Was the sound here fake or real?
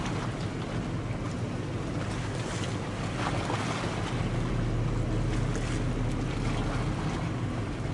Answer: real